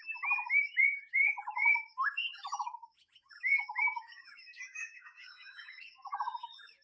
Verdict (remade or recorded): remade